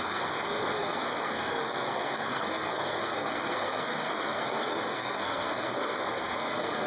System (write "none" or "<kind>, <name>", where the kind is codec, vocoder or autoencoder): codec, SNAC